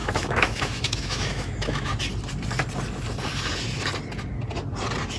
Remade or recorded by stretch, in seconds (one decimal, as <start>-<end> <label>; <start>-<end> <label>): 0.0-1.9 remade; 1.9-5.2 recorded